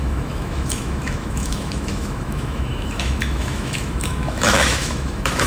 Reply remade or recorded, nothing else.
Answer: remade